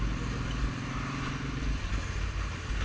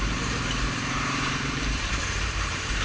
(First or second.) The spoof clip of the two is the second